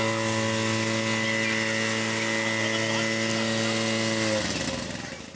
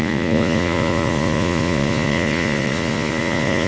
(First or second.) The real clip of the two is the first